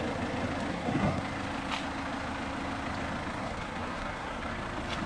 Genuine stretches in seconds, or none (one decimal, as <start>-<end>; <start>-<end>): 0.0-0.7; 1.2-3.4; 4.5-5.1